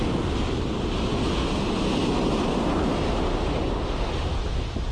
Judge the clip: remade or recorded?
recorded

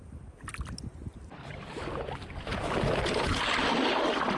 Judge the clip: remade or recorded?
recorded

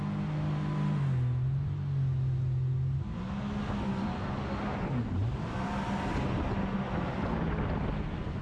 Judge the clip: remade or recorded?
recorded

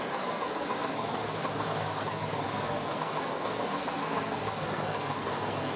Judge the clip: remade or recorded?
remade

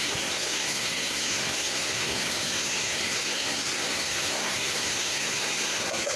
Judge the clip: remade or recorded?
remade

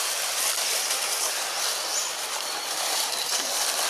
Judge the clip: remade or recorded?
recorded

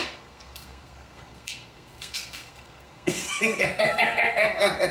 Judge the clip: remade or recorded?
remade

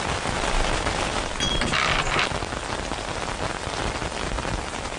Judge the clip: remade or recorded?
recorded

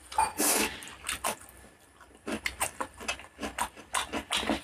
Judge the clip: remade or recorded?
recorded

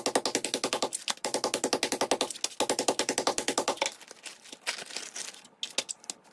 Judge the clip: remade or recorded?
recorded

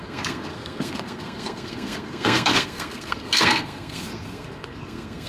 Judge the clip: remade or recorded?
remade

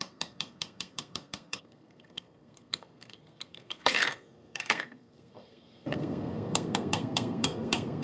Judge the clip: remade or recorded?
remade